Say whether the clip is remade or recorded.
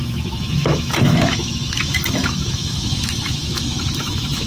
remade